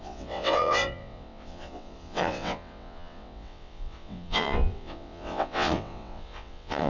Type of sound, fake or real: fake